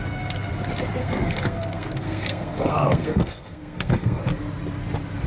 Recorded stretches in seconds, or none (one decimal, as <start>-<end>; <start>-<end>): 0.0-1.0; 4.2-5.3